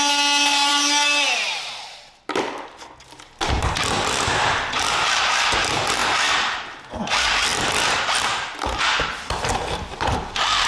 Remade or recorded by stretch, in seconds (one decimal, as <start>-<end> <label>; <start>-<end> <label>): 0.0-7.5 recorded; 7.5-10.7 remade